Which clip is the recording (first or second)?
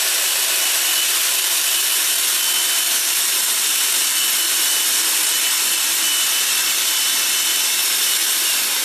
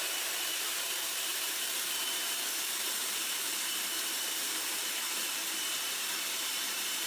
first